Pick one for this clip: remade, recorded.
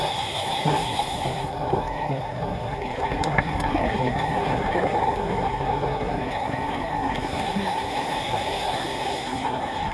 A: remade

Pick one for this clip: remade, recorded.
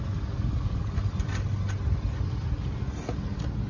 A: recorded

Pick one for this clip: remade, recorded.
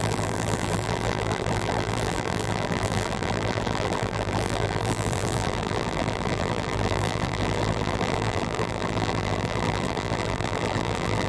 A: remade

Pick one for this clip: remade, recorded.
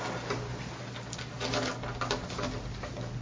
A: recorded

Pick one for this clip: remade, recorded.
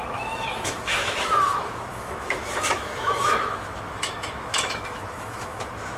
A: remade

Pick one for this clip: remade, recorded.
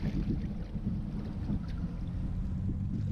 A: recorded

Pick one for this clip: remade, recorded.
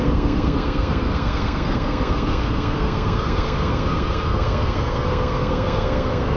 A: remade